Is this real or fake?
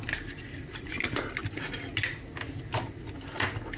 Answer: real